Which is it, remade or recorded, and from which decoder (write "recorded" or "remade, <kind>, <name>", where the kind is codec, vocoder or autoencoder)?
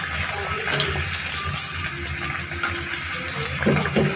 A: recorded